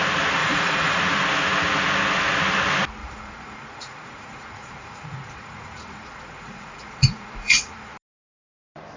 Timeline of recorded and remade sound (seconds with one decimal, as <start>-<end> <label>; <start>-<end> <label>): 0.0-0.4 recorded; 0.4-1.0 remade; 1.0-3.0 recorded; 3.0-7.9 remade; 7.9-9.0 recorded